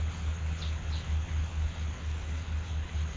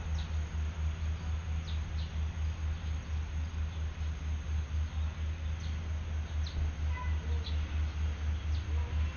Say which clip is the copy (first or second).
first